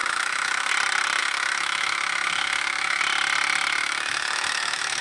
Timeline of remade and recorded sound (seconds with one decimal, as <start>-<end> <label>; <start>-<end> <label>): 0.0-0.7 remade; 0.7-1.2 recorded; 1.2-3.0 remade; 3.0-3.8 recorded; 3.8-5.0 remade